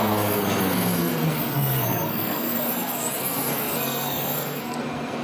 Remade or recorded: remade